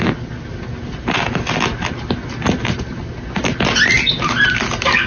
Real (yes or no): yes